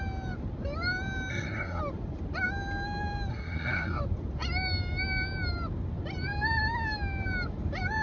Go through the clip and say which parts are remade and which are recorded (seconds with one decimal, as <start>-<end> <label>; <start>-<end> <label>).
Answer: 0.0-1.3 recorded; 1.3-1.8 remade; 1.8-3.3 recorded; 3.3-4.0 remade; 4.0-8.0 recorded